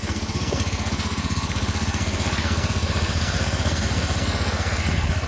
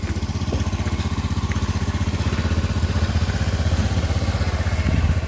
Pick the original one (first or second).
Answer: second